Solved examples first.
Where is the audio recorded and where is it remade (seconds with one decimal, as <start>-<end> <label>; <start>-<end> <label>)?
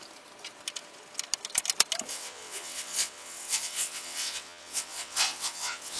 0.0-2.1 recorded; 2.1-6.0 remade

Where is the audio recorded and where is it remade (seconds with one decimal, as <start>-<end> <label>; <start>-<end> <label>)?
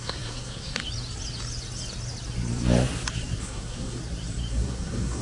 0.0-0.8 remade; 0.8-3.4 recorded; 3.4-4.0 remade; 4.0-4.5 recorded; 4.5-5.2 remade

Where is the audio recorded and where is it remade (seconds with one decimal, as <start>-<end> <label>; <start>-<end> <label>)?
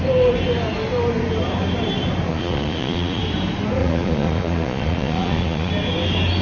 0.0-2.3 recorded; 2.3-3.2 remade; 3.2-3.8 recorded; 3.8-5.7 remade; 5.7-6.4 recorded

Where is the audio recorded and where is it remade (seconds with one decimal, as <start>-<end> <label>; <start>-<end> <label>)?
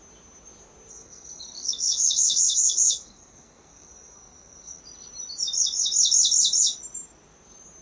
0.0-0.9 recorded; 0.9-4.8 remade; 4.8-7.8 recorded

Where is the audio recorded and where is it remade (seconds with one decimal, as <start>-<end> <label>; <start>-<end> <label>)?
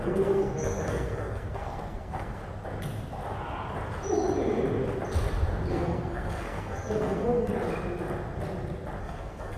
0.0-2.4 remade; 2.4-5.7 recorded; 5.7-7.5 remade; 7.5-9.0 recorded; 9.0-9.6 remade